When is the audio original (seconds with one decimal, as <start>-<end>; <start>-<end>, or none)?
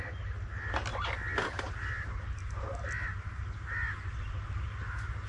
0.0-5.3